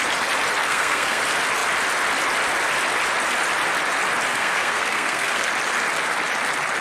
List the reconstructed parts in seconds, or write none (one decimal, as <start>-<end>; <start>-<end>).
0.6-1.2; 4.3-5.5